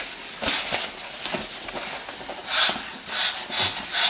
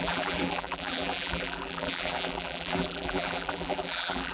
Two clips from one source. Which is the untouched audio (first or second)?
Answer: first